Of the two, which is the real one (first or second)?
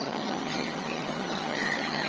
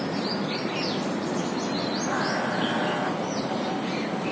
second